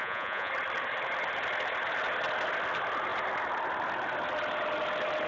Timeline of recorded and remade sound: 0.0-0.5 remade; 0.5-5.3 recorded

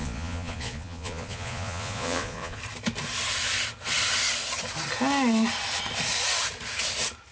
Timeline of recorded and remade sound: 0.0-2.6 remade; 2.6-7.3 recorded

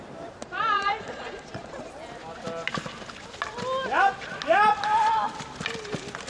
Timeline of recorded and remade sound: 0.0-0.4 recorded; 0.4-1.9 remade; 1.9-6.3 recorded

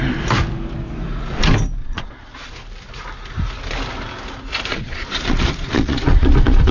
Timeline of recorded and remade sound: 0.0-1.8 recorded; 1.8-2.5 remade; 2.5-4.7 recorded; 4.7-6.7 remade

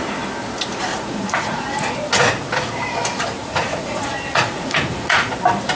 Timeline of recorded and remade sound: 0.0-0.9 recorded; 0.9-2.0 remade; 2.0-3.1 recorded; 3.1-5.3 remade; 5.3-5.8 recorded